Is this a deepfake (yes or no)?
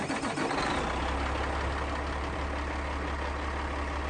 no